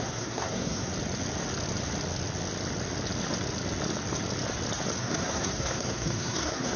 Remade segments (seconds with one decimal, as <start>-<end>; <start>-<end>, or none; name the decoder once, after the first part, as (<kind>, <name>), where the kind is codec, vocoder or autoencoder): 0.0-0.9 (codec, SNAC); 5.0-6.8

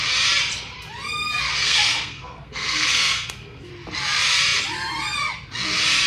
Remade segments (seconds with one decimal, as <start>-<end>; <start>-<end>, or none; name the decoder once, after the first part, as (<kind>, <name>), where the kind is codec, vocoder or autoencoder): 1.6-3.7 (codec, SNAC)

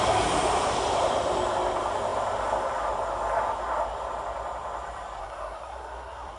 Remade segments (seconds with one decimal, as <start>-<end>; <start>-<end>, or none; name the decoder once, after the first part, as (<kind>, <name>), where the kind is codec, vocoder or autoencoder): 5.2-6.4 (codec, SNAC)